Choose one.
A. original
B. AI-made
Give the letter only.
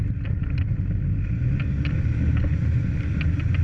A